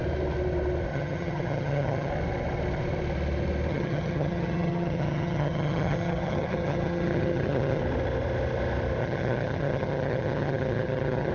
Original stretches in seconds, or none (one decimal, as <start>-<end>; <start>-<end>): 0.0-0.9; 2.1-3.7; 7.8-9.0